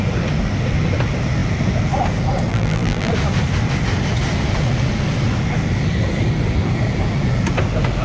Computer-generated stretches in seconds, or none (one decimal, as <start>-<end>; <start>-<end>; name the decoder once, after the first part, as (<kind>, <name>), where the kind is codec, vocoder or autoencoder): 2.5-3.1 (vocoder, BigVGAN v2)